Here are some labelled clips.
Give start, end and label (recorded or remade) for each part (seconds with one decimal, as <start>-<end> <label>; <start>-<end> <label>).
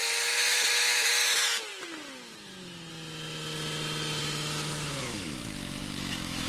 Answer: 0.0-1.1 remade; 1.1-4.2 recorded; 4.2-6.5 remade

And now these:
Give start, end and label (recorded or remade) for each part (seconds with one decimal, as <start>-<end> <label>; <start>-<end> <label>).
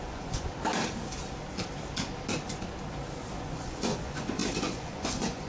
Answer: 0.0-0.5 remade; 0.5-3.4 recorded; 3.4-5.5 remade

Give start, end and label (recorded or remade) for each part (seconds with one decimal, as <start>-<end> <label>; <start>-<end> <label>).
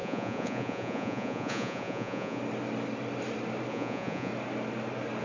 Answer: 0.0-2.4 remade; 2.4-3.7 recorded; 3.7-4.3 remade; 4.3-5.2 recorded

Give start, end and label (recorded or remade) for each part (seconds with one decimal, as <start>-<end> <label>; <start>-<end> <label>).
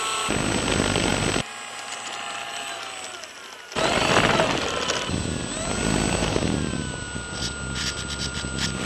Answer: 0.0-8.9 recorded